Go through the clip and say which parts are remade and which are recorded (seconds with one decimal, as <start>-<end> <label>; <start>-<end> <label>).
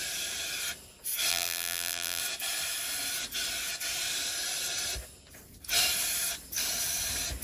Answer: 0.0-1.3 recorded; 1.3-2.2 remade; 2.2-7.4 recorded